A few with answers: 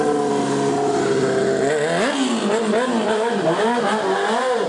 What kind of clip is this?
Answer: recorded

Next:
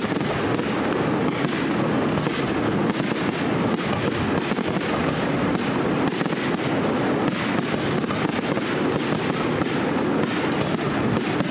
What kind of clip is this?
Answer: recorded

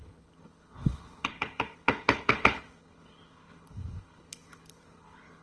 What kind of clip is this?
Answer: remade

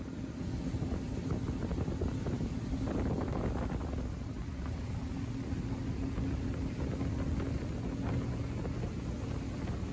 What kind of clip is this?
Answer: recorded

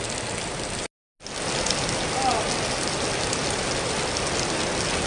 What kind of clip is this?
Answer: recorded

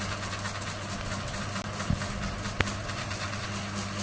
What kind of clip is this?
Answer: recorded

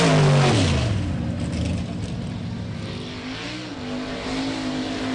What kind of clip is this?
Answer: recorded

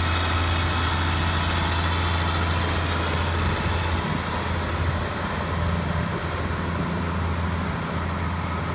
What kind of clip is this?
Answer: recorded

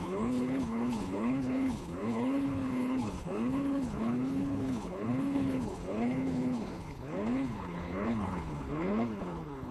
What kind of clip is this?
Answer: remade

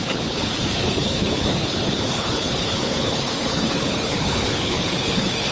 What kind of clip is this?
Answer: remade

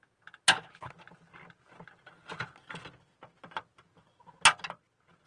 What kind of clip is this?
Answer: recorded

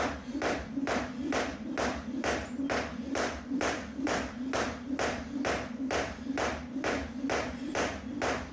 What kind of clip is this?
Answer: recorded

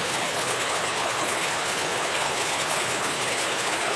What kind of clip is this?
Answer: remade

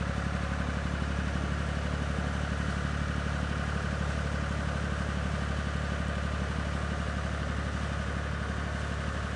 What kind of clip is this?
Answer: recorded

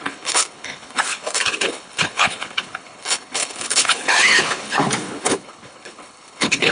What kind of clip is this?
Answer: remade